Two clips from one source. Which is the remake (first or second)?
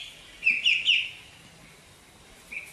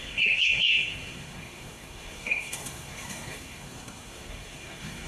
second